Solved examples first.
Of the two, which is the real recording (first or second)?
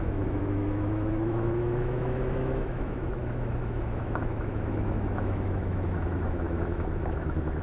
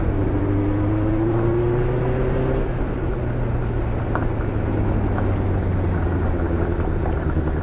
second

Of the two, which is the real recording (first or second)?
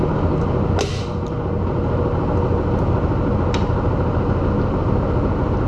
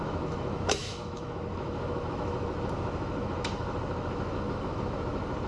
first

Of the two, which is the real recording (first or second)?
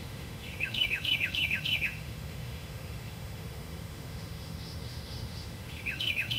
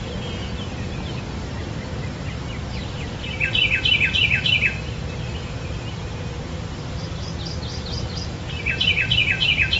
second